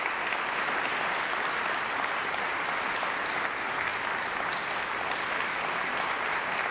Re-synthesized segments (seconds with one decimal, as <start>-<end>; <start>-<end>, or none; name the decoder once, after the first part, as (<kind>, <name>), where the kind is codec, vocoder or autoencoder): none